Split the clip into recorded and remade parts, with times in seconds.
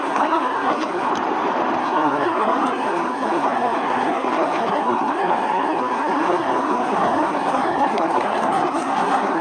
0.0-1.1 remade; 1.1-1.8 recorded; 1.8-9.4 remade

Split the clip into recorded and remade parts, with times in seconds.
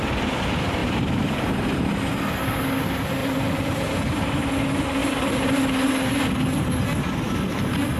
0.0-0.8 recorded; 0.8-2.0 remade; 2.0-3.2 recorded; 3.2-4.5 remade; 4.5-8.0 recorded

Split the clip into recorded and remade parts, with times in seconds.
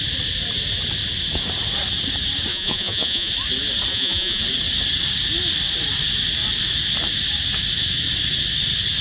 0.0-2.5 recorded; 2.5-3.3 remade; 3.3-3.9 recorded; 3.9-4.4 remade; 4.4-9.0 recorded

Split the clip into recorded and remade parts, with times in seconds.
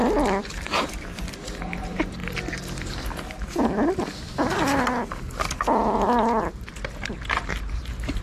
0.0-0.5 recorded; 0.5-2.2 remade; 2.2-6.4 recorded; 6.4-8.2 remade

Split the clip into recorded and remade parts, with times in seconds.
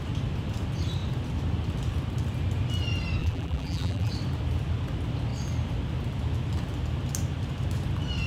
0.0-3.2 recorded; 3.2-4.1 remade; 4.1-8.3 recorded